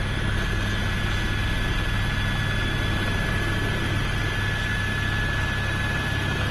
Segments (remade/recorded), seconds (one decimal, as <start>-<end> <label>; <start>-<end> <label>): 0.0-6.5 recorded